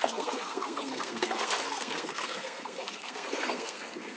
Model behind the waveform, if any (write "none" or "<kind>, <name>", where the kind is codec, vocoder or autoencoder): codec, SNAC